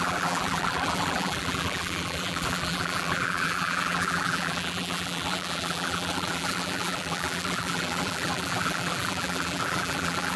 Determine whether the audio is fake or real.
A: fake